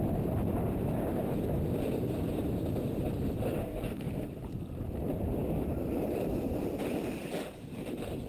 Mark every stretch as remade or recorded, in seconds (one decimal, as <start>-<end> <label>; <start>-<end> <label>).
0.0-3.6 recorded; 3.6-4.3 remade; 4.3-8.3 recorded